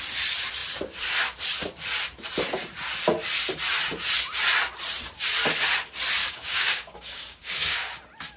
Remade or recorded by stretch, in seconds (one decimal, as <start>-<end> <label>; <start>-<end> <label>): 0.0-6.2 recorded; 6.2-8.0 remade; 8.0-8.4 recorded